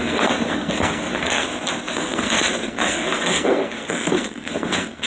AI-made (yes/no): yes